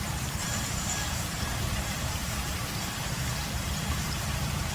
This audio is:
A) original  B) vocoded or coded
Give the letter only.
B